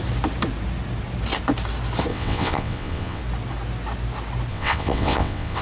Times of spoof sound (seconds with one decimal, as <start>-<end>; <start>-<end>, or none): 2.1-3.2; 4.5-5.6